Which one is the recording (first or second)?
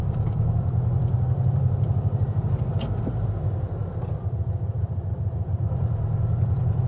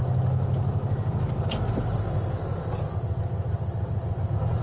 second